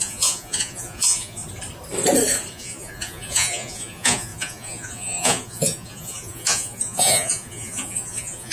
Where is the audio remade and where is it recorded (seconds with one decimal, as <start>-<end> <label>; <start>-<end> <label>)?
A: 0.0-1.4 remade; 1.4-2.5 recorded; 2.5-8.5 remade